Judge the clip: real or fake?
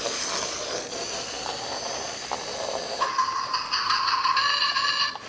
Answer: real